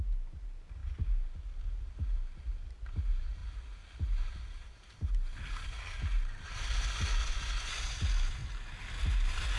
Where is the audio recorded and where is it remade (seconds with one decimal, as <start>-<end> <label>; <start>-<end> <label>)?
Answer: 0.0-7.2 recorded; 7.2-7.8 remade; 7.8-9.6 recorded